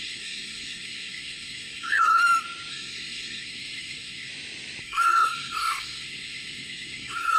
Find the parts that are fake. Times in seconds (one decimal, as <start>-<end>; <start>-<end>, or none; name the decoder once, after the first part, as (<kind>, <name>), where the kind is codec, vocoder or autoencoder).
0.0-2.2 (codec, SNAC); 2.7-4.3; 4.8-7.4